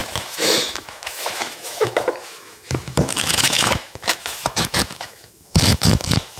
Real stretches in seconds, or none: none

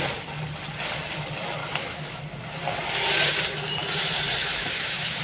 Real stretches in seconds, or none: 0.0-1.6; 2.2-4.4

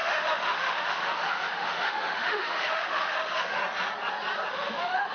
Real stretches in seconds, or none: 3.6-4.5

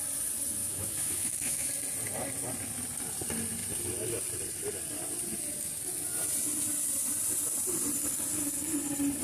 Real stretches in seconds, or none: 0.0-0.6; 1.7-9.2